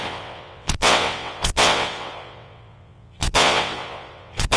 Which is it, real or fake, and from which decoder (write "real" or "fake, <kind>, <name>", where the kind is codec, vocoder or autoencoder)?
fake, vocoder, WaveNeXt